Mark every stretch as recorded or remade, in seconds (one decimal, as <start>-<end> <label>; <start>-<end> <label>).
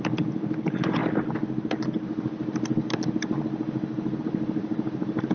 0.0-1.0 remade; 1.0-4.2 recorded; 4.2-5.3 remade